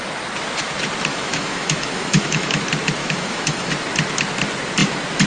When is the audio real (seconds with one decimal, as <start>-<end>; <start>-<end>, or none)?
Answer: 0.0-1.1; 2.6-3.0; 3.7-5.3